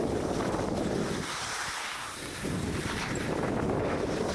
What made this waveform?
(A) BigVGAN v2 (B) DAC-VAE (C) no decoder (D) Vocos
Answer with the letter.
C